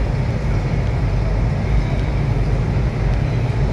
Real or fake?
real